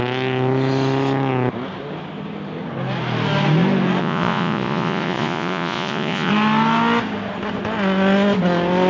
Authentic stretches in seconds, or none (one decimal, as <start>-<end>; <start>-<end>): 0.0-4.0; 6.3-8.9